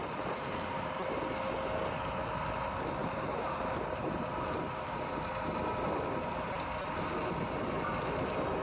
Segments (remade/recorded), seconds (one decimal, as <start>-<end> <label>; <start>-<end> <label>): 0.0-1.2 remade; 1.2-3.0 recorded; 3.0-5.3 remade; 5.3-8.6 recorded